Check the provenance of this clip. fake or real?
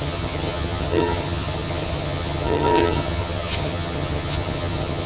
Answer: fake